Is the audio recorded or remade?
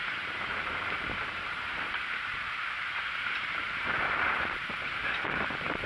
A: remade